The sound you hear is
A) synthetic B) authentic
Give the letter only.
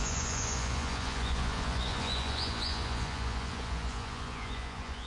A